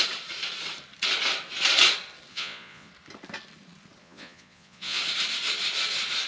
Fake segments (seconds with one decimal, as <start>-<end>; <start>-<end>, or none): 2.3-2.9; 4.0-5.0